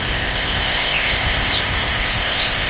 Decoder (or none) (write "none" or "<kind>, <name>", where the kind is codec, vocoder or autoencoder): codec, ZipCodec